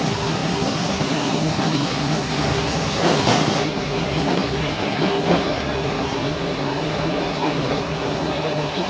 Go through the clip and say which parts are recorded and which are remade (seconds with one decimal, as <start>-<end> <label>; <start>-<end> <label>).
0.0-8.9 remade